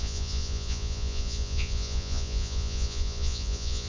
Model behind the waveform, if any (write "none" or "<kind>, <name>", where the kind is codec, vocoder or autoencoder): vocoder, Vocos